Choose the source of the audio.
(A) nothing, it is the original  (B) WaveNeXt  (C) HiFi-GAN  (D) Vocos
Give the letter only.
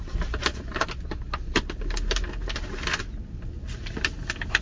A